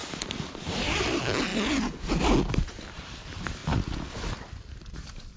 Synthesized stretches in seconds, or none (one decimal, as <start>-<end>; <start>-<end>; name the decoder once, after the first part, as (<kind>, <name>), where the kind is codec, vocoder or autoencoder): 1.0-1.5 (vocoder, BigVGAN v2); 2.5-5.4